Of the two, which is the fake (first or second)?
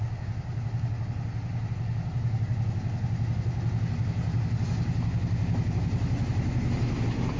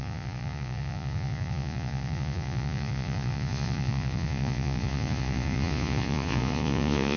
second